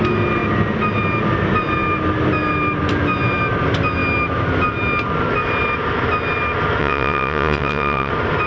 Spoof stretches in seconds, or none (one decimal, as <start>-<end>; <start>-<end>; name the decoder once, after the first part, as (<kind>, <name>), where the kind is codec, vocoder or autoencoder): 6.8-8.1 (vocoder, WaveNeXt)